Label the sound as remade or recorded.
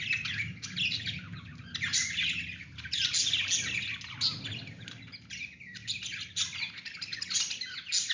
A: recorded